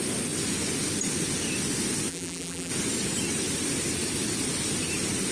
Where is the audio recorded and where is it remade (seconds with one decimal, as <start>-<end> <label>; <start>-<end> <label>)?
0.0-2.1 recorded; 2.1-2.7 remade; 2.7-5.3 recorded